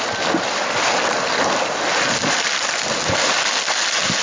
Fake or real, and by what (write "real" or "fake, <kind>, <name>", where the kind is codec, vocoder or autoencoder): real